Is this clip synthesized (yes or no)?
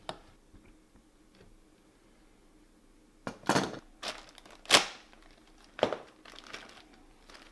no